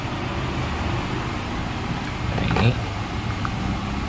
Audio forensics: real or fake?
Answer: real